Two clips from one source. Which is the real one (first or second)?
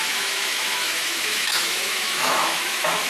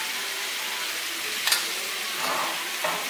second